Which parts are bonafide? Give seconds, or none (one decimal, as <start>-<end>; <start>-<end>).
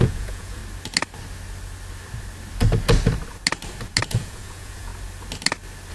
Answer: 0.6-4.1; 4.9-5.9